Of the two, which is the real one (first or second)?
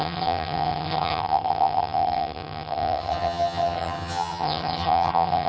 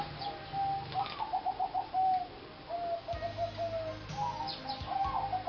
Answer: second